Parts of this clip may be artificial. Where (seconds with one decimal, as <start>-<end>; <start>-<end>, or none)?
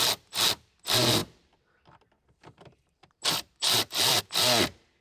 1.2-4.2